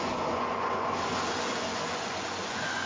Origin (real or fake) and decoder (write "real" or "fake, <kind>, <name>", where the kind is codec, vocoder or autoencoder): fake, vocoder, Vocos